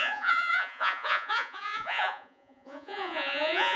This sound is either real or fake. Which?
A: fake